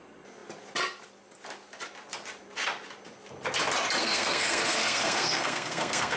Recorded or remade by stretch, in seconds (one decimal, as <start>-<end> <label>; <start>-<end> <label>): 0.0-4.0 recorded; 4.0-6.2 remade